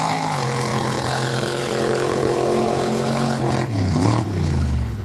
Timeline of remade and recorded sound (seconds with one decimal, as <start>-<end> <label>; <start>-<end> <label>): 0.0-5.0 remade